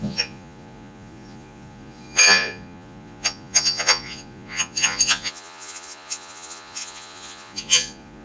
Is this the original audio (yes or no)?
no